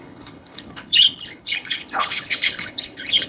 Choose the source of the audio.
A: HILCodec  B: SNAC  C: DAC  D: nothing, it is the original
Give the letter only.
A